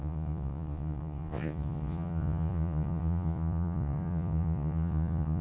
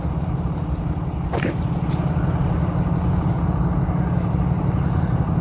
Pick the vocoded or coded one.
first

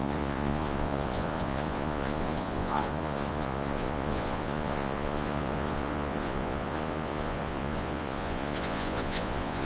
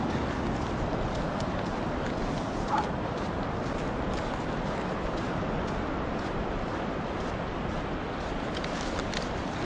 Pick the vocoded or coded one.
first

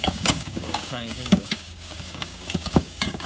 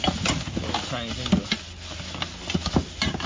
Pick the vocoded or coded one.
first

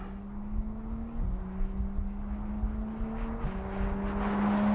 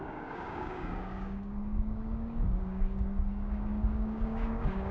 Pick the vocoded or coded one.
second